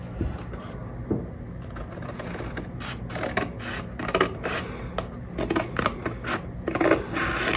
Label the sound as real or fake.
real